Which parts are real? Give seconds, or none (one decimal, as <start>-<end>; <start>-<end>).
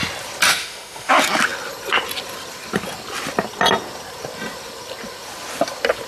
0.0-0.5; 1.1-6.1